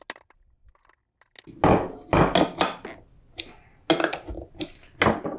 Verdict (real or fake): real